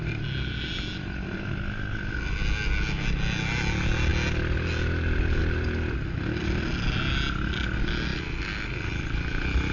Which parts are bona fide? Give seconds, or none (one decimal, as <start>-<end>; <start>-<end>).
0.0-9.7